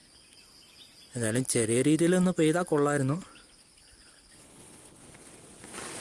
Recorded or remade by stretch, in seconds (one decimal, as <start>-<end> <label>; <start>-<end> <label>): 0.0-3.6 recorded; 3.6-5.0 remade; 5.0-6.0 recorded